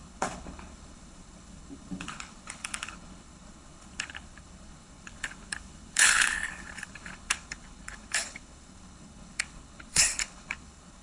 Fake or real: fake